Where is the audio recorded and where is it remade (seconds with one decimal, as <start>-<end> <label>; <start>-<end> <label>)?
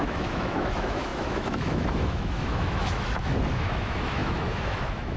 0.0-5.2 remade